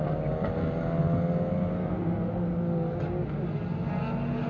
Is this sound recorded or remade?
recorded